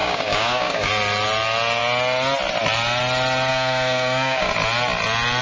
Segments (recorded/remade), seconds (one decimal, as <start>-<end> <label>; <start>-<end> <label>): 0.0-0.9 remade; 0.9-3.5 recorded; 3.5-4.5 remade; 4.5-5.4 recorded